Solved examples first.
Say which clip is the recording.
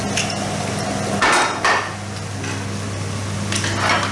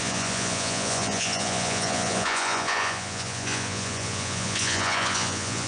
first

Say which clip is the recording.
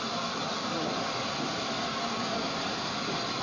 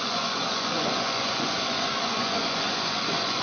first